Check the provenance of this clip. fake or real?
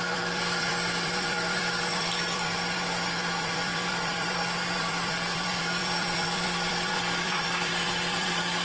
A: fake